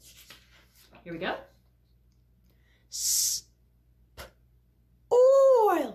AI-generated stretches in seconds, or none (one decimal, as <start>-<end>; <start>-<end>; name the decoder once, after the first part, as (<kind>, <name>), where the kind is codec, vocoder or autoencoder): none